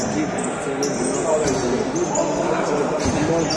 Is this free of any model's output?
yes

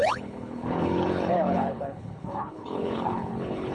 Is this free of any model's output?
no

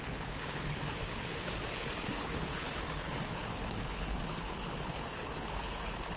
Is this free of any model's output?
no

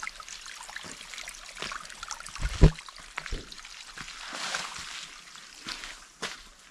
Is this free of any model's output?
yes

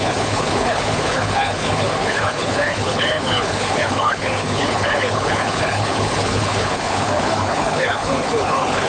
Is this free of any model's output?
no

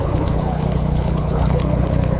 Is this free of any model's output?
no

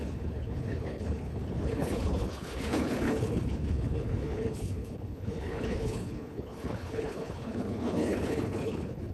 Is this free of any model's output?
no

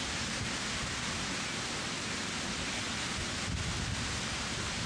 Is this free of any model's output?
yes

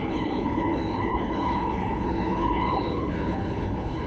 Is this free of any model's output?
no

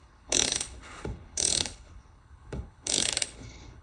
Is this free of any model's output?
no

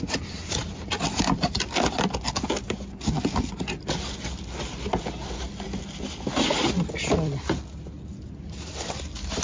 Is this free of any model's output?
yes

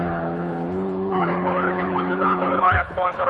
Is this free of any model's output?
no